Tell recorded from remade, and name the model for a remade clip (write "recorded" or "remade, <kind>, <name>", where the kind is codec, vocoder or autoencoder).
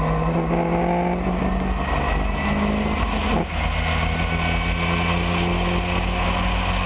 recorded